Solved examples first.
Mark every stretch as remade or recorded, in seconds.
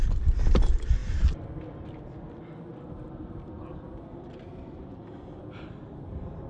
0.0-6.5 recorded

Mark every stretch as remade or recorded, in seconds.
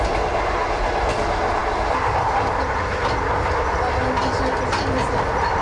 0.0-5.6 recorded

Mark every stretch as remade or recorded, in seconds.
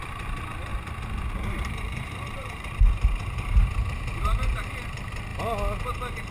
0.0-0.7 remade; 0.7-1.3 recorded; 1.3-5.3 remade; 5.3-6.3 recorded